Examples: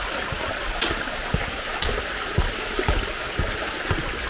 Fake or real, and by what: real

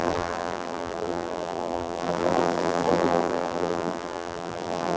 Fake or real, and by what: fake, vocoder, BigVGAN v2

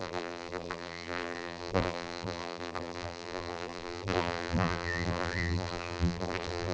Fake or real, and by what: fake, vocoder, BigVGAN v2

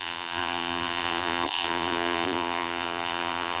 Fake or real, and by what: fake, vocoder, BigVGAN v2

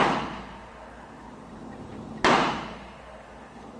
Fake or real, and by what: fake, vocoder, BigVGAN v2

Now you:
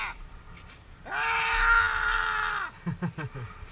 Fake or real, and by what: real